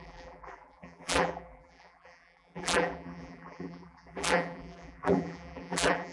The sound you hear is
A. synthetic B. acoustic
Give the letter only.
A